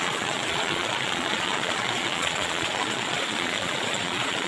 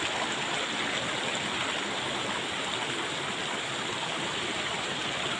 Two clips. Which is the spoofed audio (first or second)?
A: first